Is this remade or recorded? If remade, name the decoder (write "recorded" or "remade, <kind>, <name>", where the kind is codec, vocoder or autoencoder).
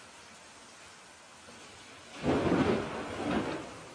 recorded